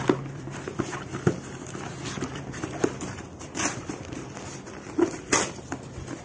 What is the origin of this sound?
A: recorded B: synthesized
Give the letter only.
B